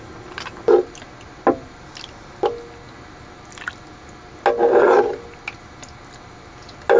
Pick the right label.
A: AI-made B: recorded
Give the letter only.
B